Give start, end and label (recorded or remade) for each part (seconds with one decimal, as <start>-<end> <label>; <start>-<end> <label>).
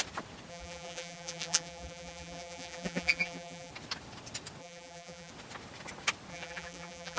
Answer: 0.0-0.5 recorded; 0.5-3.7 remade; 3.7-4.6 recorded; 4.6-5.3 remade; 5.3-6.3 recorded; 6.3-7.2 remade